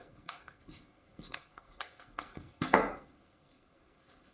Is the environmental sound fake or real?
fake